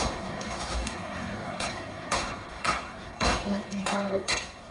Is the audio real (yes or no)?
no